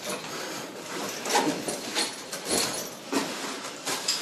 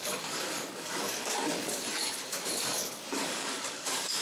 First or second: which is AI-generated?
second